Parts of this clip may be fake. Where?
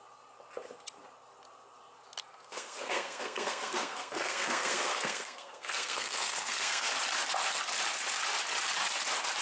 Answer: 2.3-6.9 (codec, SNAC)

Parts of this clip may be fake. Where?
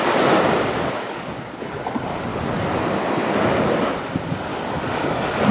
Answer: 1.0-1.6 (codec, DAC); 2.3-3.1; 4.5-5.5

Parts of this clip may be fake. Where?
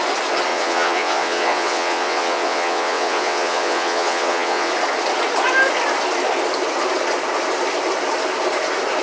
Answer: 0.5-4.7 (vocoder, WaveNeXt)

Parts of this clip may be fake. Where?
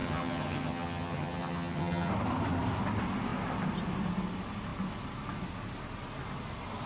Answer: 0.0-2.1 (vocoder, HiFi-GAN)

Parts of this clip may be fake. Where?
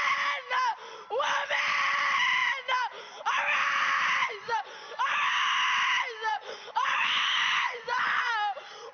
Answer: 4.2-5.0 (vocoder, Vocos); 6.3-8.3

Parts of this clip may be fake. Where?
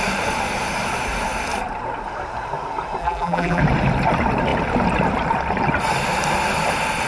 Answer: 3.0-3.6 (vocoder, BigVGAN v2)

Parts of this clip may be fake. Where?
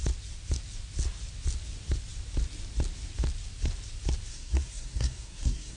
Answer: 4.3-5.8 (codec, SNAC)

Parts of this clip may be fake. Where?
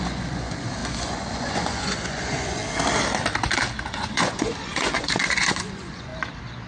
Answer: 0.0-2.6 (vocoder, Vocos); 3.8-6.1